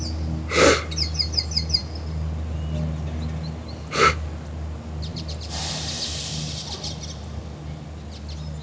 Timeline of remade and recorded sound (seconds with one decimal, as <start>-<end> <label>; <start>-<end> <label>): 0.0-5.1 recorded; 5.1-6.3 remade; 6.3-8.6 recorded